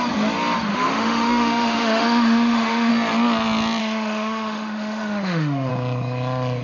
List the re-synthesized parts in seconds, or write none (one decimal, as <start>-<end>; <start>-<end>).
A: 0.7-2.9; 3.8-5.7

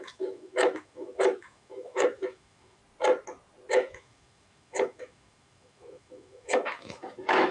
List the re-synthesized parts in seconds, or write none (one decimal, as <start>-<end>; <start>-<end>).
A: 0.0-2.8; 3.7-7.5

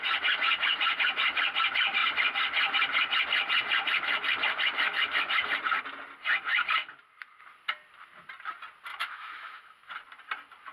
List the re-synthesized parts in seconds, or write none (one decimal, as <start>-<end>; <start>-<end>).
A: 8.9-9.9

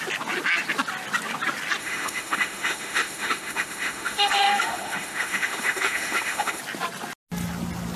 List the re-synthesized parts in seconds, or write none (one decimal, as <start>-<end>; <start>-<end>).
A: 1.8-6.6

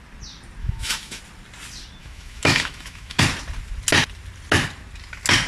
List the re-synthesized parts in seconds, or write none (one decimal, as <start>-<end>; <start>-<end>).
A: 0.6-1.2; 2.0-3.2